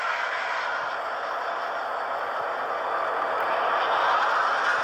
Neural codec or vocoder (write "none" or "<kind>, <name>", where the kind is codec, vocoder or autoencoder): none